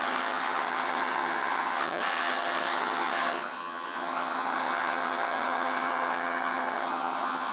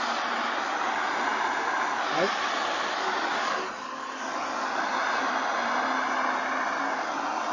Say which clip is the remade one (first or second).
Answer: first